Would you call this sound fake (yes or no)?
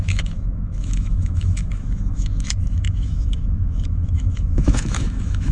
yes